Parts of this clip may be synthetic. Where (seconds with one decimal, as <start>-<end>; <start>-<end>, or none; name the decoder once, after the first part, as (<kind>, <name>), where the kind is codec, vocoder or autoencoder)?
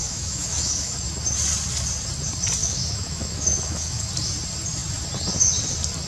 0.0-1.0 (autoencoder, DAC-VAE); 2.6-4.1